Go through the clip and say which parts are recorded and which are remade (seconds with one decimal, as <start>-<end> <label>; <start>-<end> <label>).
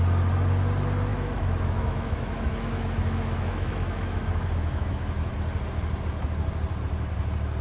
0.0-1.1 recorded; 1.1-5.3 remade; 5.3-7.6 recorded